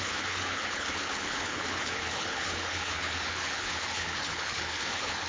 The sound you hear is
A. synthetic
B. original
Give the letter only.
A